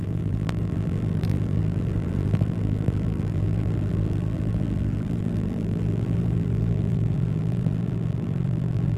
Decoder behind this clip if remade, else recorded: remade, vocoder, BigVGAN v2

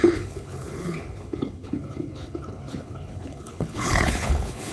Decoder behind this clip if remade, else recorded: remade, codec, HILCodec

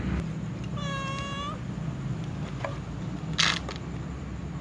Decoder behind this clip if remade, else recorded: recorded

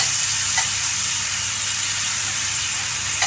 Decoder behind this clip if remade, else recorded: remade, vocoder, BigVGAN v2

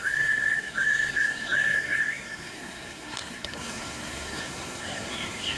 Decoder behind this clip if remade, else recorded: remade, codec, SNAC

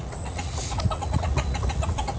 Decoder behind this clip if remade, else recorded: remade, vocoder, Vocos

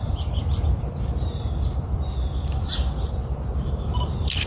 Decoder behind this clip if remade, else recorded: remade, vocoder, BigVGAN v2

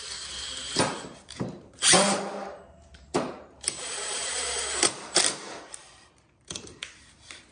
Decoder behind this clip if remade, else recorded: remade, vocoder, BigVGAN v2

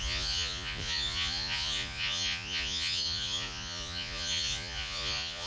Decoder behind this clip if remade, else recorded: remade, vocoder, Vocos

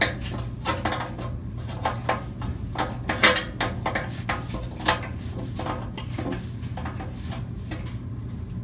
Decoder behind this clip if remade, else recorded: recorded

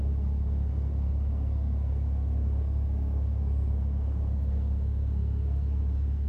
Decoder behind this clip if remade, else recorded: remade, codec, SNAC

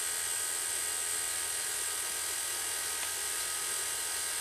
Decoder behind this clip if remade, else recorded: recorded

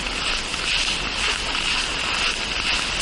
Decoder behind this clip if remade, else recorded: recorded